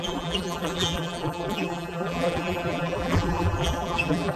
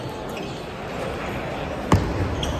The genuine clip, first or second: second